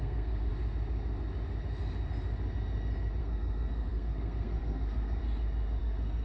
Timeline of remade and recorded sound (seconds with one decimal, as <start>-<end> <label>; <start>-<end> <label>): 0.0-0.5 remade; 0.5-3.2 recorded; 3.2-5.2 remade; 5.2-5.8 recorded; 5.8-6.2 remade